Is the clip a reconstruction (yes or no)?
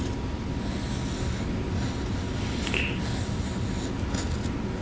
no